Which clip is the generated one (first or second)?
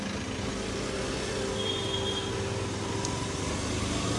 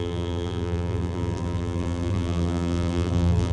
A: second